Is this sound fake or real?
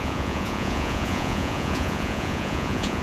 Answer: fake